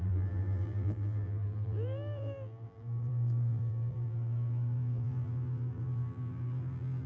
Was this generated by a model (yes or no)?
yes